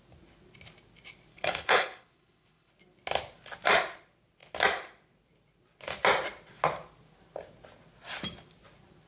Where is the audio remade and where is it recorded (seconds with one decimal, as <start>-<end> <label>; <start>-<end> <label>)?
0.0-1.3 recorded; 1.3-2.7 remade; 2.7-9.1 recorded